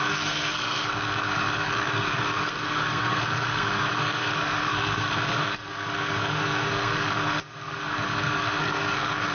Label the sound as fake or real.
fake